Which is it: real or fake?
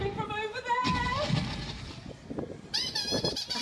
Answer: real